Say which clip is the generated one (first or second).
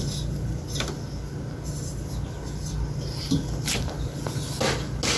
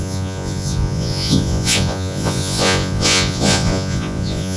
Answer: second